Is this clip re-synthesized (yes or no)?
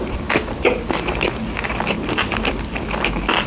no